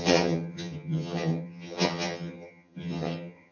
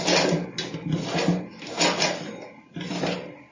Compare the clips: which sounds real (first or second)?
second